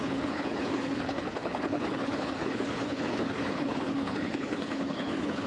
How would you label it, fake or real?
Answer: fake